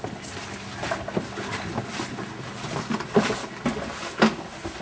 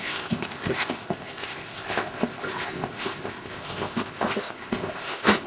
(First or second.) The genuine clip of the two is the first